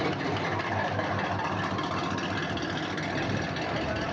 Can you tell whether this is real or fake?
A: real